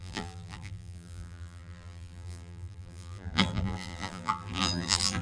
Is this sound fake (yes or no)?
yes